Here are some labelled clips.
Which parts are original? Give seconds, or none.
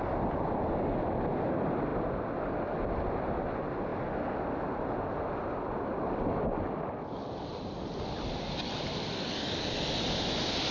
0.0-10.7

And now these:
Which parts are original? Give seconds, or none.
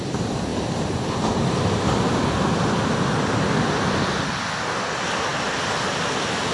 0.0-0.5; 1.9-5.3; 5.9-6.5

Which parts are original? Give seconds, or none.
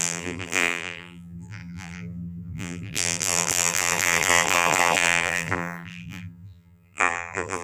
none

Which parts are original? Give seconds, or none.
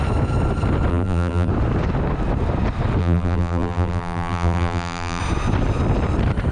0.0-0.9; 1.5-3.0; 5.2-6.5